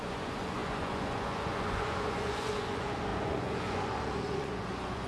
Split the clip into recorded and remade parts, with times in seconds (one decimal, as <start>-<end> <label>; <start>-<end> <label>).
0.0-5.1 remade